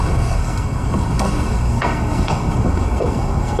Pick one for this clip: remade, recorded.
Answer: remade